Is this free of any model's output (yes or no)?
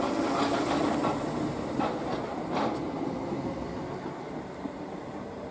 yes